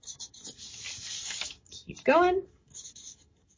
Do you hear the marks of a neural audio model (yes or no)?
yes